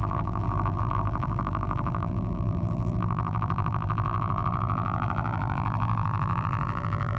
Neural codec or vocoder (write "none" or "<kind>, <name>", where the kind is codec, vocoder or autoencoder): vocoder, BigVGAN v2